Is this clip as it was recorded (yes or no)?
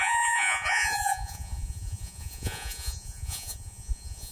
no